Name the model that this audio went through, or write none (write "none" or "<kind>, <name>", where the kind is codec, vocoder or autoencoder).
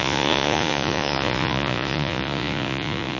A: vocoder, Vocos